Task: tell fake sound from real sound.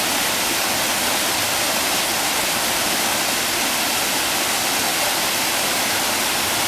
real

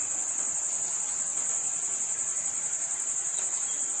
real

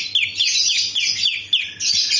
real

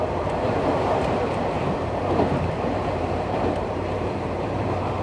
fake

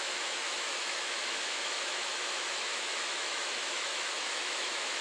fake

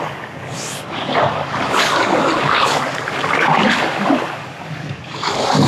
fake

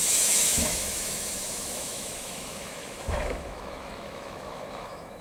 fake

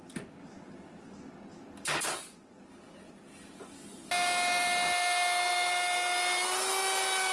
real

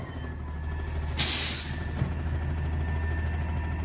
real